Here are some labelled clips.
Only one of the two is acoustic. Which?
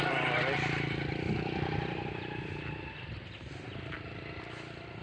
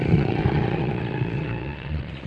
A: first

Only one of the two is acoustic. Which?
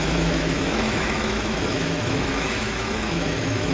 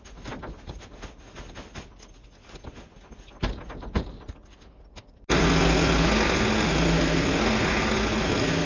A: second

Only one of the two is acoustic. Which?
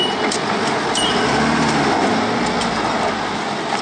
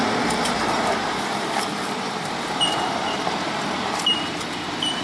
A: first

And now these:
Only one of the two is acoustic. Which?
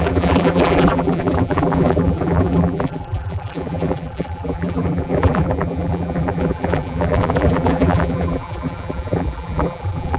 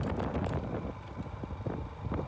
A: second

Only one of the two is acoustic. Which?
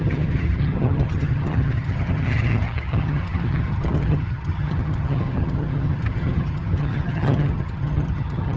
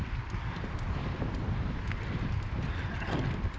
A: second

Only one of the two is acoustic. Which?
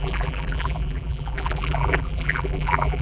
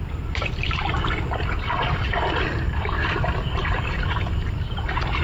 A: second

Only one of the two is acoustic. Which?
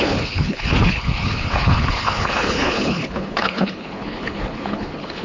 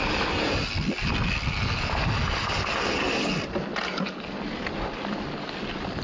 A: second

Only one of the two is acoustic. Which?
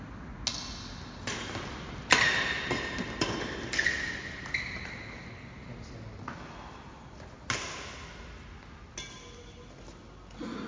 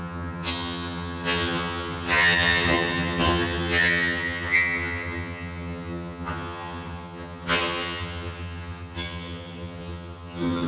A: first